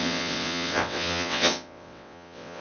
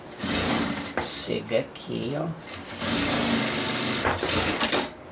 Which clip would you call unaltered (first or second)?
second